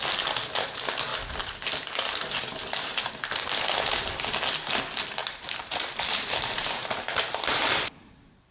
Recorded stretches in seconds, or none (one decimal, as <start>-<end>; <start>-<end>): 0.0-1.1; 3.1-5.2; 7.6-8.5